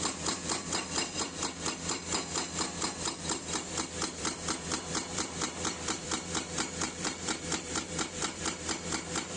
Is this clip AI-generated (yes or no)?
yes